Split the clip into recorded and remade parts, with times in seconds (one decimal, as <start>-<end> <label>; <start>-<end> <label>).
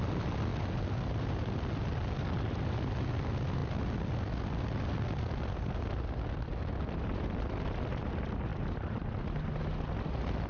0.0-10.5 recorded